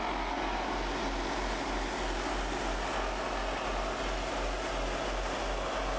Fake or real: real